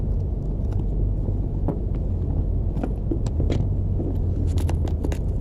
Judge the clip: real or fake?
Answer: real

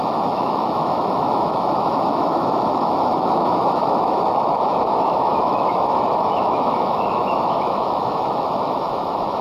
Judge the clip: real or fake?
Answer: fake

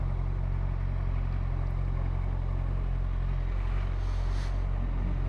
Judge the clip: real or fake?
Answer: real